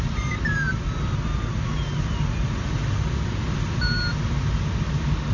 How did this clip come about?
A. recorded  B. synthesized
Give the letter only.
A